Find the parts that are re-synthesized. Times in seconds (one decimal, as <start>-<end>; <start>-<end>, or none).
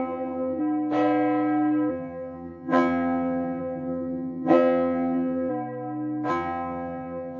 0.0-0.6; 1.9-5.5; 6.3-7.4